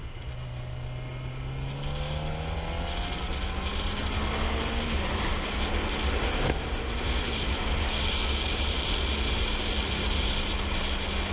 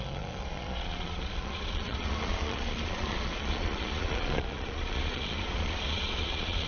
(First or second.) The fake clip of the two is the second